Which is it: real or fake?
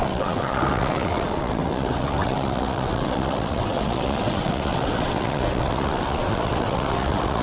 fake